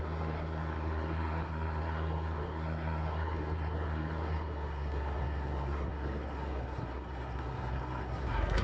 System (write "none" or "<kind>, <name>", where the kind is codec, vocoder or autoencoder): codec, SNAC